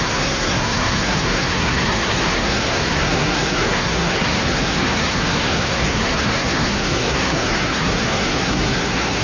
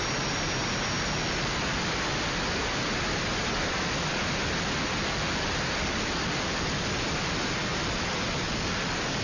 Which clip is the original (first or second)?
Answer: second